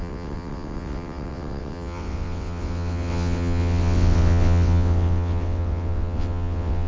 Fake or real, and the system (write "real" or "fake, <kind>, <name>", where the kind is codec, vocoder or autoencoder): fake, vocoder, WaveNeXt